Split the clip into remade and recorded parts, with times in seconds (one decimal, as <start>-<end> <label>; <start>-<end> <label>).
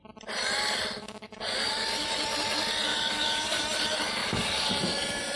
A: 0.0-1.0 recorded; 1.0-1.7 remade; 1.7-2.9 recorded; 2.9-3.6 remade; 3.6-4.2 recorded; 4.2-4.7 remade; 4.7-5.4 recorded